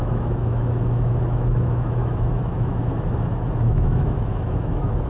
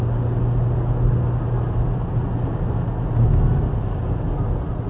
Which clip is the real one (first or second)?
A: second